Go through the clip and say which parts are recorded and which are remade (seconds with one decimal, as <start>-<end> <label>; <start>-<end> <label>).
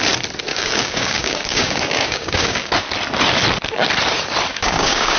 0.0-0.5 recorded; 0.5-2.7 remade; 2.7-4.5 recorded; 4.5-5.2 remade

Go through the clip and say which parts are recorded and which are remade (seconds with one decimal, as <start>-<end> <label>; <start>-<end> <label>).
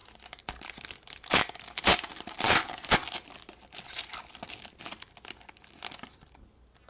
0.0-6.9 recorded